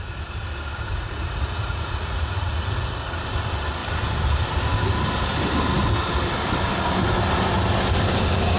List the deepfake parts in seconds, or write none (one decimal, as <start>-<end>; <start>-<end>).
0.9-3.2